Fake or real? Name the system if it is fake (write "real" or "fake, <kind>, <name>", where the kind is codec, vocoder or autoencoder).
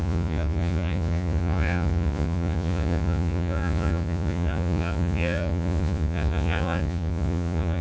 fake, vocoder, Vocos